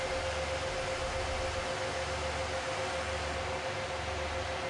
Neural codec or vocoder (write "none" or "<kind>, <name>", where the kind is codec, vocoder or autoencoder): none